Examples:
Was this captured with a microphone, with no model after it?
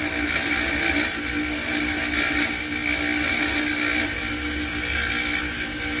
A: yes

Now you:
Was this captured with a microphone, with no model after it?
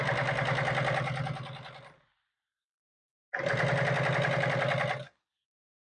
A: yes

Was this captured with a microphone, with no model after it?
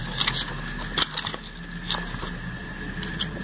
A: yes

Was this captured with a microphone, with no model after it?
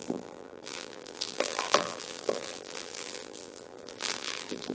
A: no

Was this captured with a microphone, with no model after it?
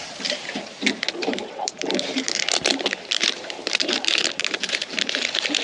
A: no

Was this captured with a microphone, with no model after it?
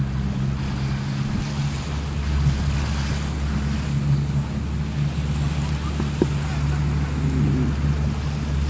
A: yes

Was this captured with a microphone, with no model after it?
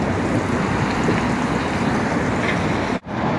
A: yes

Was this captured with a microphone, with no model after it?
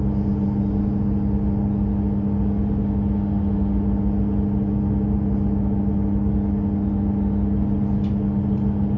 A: yes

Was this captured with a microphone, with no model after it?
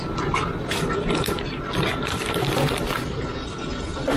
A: yes